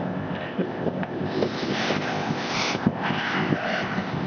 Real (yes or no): no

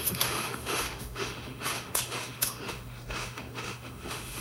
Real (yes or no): no